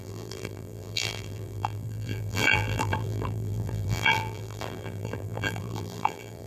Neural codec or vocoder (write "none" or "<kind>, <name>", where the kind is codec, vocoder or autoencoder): vocoder, BigVGAN v2